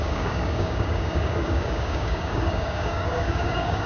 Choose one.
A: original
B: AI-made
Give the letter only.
B